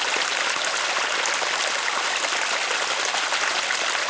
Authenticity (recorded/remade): recorded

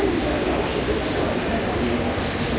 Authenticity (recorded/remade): recorded